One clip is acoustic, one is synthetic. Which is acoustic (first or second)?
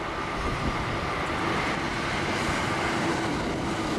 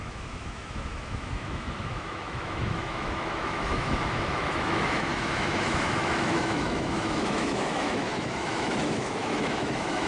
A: first